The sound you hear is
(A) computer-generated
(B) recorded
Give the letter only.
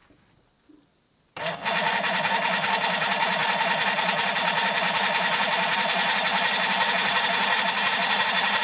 B